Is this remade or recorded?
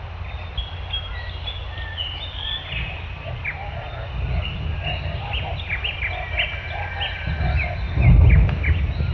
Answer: recorded